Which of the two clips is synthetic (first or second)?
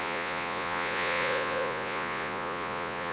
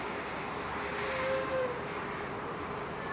first